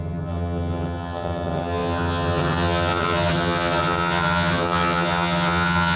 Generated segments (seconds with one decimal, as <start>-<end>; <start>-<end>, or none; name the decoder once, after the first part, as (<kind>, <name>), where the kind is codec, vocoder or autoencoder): 0.0-6.0 (vocoder, HiFi-GAN)